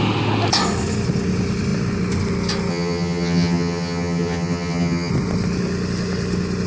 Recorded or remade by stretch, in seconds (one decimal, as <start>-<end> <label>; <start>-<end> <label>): 0.0-2.7 recorded; 2.7-5.1 remade; 5.1-6.7 recorded